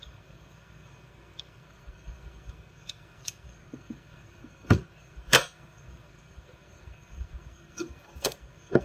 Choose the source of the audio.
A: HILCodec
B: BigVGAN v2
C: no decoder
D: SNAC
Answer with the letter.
D